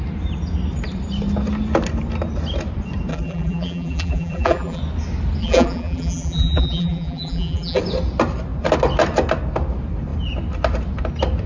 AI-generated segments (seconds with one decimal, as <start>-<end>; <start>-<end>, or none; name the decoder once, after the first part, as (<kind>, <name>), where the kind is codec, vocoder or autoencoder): 3.1-4.8 (vocoder, BigVGAN v2); 5.4-7.8